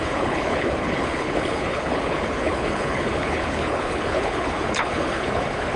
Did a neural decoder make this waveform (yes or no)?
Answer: yes